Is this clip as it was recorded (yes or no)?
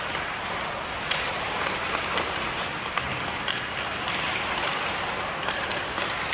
yes